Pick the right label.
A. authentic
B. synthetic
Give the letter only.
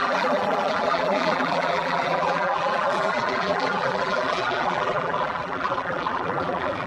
B